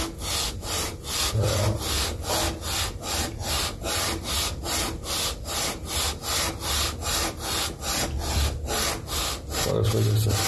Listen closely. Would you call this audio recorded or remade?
recorded